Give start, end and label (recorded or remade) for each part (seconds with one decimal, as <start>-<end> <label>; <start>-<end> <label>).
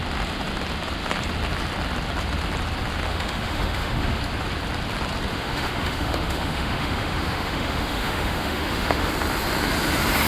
0.0-3.1 recorded; 3.1-4.2 remade; 4.2-5.3 recorded; 5.3-9.1 remade; 9.1-10.3 recorded